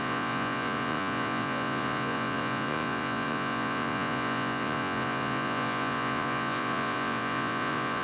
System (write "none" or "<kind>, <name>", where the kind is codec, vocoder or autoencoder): vocoder, Vocos